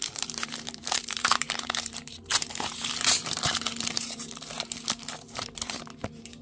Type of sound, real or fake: fake